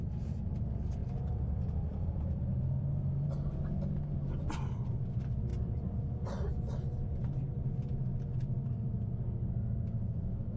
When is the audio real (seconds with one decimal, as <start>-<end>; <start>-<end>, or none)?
0.0-1.0; 3.3-5.5; 9.1-10.6